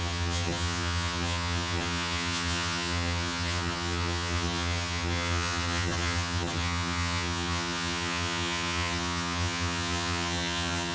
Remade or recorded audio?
remade